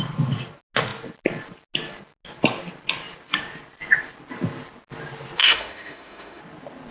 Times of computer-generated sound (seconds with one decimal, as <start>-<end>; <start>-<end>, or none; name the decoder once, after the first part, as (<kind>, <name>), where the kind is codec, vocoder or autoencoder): 5.4-6.4 (autoencoder, DAC-VAE)